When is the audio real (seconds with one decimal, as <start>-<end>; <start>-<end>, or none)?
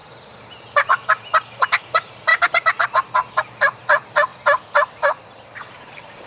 2.3-3.4; 4.3-5.6